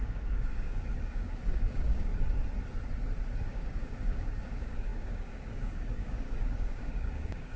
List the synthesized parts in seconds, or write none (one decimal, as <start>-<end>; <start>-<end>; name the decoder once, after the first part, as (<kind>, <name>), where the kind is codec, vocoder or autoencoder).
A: 0.0-2.1 (codec, DAC); 3.4-7.6